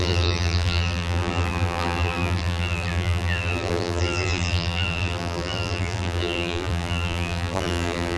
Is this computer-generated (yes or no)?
yes